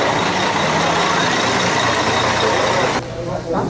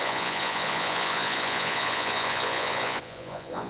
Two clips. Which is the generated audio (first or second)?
second